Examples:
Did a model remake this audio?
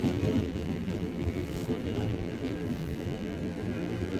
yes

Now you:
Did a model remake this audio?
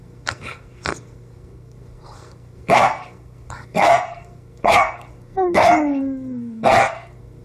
yes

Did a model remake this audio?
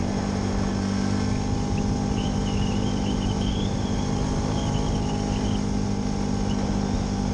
no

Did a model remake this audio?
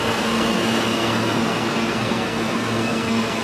yes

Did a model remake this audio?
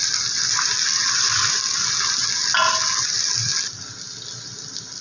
no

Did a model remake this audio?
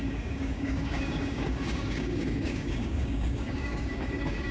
yes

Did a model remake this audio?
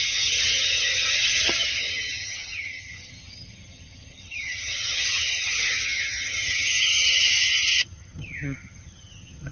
yes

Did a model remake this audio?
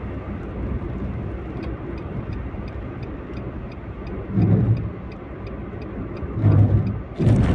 no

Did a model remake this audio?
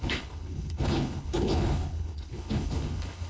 yes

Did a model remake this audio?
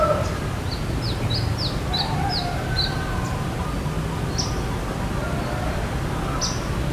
no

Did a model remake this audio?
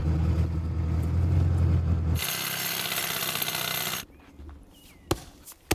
no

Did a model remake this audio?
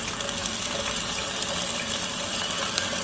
no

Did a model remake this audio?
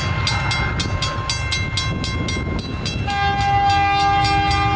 no